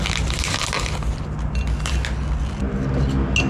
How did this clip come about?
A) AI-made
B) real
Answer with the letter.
B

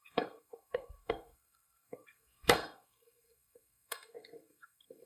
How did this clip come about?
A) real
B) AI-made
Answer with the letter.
B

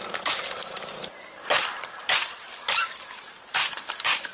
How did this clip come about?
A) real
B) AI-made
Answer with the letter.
B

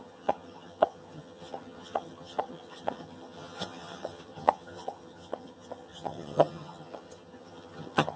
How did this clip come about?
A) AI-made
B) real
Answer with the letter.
A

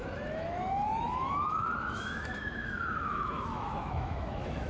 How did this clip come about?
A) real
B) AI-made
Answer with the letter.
B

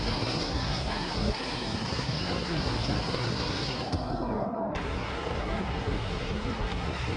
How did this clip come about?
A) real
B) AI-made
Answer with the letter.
B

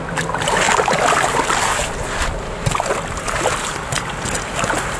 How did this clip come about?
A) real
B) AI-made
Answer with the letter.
A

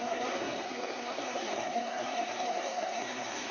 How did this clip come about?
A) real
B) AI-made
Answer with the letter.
B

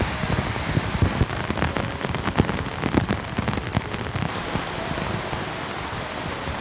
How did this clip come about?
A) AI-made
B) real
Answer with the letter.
B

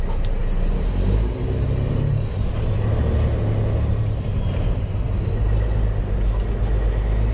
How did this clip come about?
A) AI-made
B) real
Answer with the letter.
B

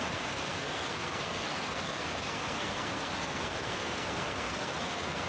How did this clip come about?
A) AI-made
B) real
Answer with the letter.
A